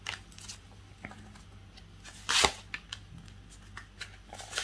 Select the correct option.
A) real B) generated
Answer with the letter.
A